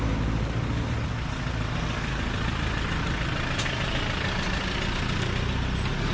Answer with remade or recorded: recorded